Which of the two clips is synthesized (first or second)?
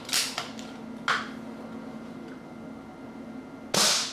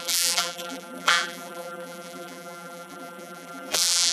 second